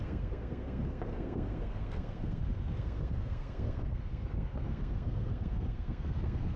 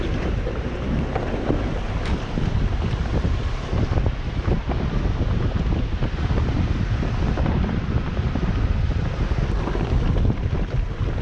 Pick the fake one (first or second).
first